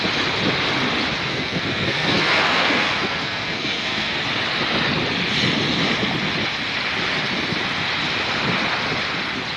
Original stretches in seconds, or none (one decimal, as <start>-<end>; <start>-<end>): 0.0-1.3; 4.2-9.6